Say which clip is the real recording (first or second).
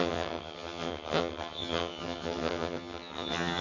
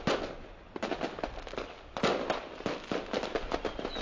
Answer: second